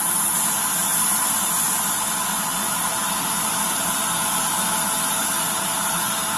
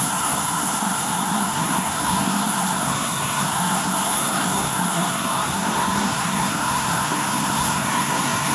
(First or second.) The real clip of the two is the first